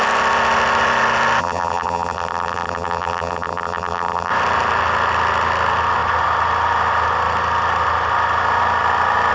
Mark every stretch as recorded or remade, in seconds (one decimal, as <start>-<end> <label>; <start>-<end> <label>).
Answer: 0.0-1.4 recorded; 1.4-4.3 remade; 4.3-9.3 recorded